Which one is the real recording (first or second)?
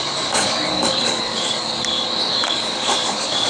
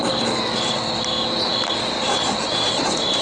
second